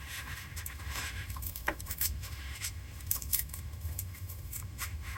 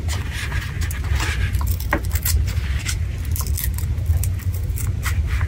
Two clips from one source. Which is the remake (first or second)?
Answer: first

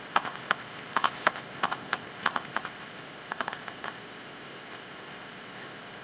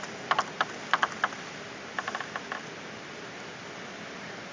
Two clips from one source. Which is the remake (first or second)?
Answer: first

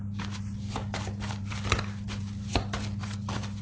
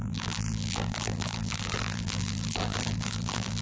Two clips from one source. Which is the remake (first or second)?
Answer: second